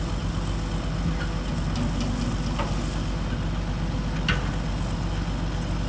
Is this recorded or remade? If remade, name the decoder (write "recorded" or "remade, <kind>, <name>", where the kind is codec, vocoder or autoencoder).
recorded